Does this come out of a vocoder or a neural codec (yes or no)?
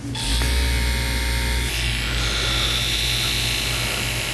no